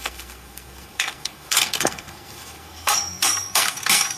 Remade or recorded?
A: remade